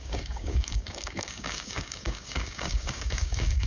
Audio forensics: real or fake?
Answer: fake